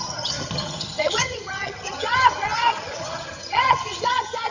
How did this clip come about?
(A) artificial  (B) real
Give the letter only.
A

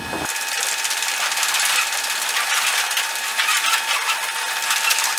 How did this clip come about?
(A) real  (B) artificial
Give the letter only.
A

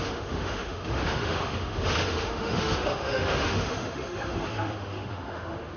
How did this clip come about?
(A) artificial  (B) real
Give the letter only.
A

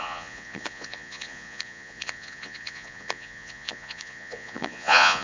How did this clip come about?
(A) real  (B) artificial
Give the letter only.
B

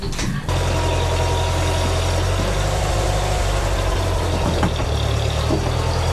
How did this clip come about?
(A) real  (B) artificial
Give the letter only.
A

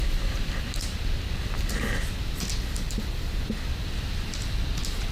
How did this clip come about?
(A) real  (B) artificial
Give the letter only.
A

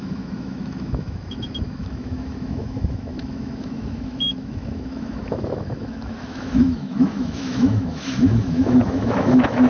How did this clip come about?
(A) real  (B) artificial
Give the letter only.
B